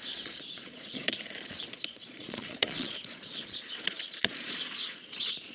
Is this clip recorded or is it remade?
remade